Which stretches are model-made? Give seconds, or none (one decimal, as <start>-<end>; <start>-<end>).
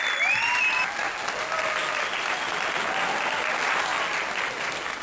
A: none